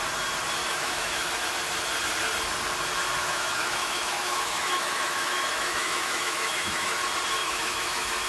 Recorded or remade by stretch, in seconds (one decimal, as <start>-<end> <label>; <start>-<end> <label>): 0.0-0.6 recorded; 0.6-1.3 remade; 1.3-3.2 recorded; 3.2-7.0 remade; 7.0-7.4 recorded; 7.4-8.3 remade